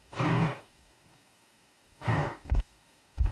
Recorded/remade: remade